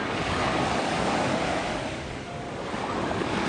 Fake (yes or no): yes